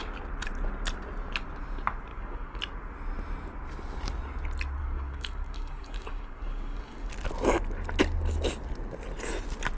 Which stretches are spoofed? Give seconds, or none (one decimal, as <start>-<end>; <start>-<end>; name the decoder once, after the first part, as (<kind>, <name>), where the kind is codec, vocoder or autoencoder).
2.1-2.6 (codec, DAC); 4.8-7.1